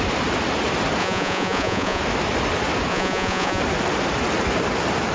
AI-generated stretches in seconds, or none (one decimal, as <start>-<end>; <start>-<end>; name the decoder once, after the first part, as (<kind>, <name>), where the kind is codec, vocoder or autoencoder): 1.0-2.0 (vocoder, Vocos); 2.9-3.6